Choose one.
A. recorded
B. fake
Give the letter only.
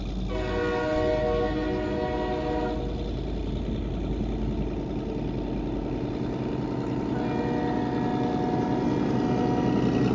A